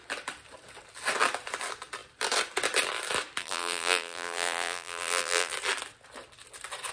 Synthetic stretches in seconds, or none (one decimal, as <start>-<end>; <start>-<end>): 3.4-5.5